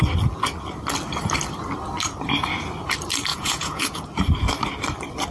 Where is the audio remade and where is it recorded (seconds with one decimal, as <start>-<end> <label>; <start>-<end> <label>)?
0.0-3.3 recorded; 3.3-4.0 remade; 4.0-5.3 recorded